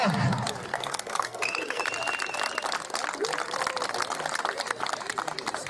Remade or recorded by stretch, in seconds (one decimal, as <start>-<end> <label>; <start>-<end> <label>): 0.0-0.7 recorded; 0.7-1.8 remade; 1.8-5.7 recorded